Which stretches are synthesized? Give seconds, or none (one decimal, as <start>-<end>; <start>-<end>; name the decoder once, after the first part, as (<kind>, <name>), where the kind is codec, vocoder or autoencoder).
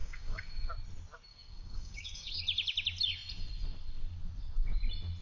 0.0-0.7 (codec, DAC); 1.3-2.3